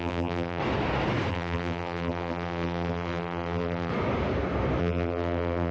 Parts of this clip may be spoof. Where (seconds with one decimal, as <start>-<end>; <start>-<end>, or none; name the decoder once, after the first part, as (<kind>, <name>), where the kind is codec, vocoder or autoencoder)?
0.0-0.6 (vocoder, BigVGAN v2); 1.3-3.9; 4.8-5.7